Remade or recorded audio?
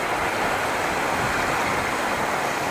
recorded